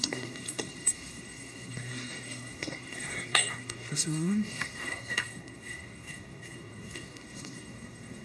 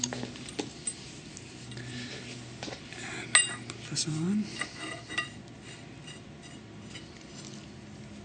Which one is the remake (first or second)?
first